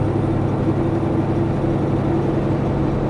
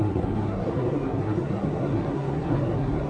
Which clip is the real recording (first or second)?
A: first